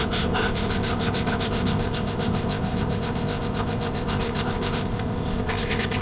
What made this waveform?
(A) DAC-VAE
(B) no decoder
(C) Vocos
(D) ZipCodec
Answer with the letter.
D